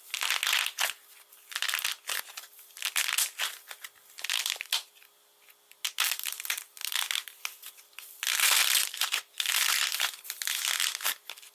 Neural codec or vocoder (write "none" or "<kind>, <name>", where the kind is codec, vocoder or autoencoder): none